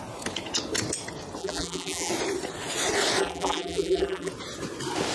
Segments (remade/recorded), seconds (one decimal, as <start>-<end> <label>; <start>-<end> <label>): 0.0-1.4 recorded; 1.4-2.1 remade; 2.1-3.2 recorded; 3.2-4.3 remade; 4.3-5.1 recorded